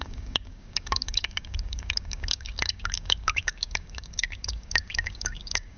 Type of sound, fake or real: fake